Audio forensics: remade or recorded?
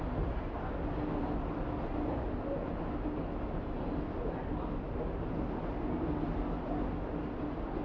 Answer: recorded